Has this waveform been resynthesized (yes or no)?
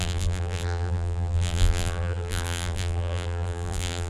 yes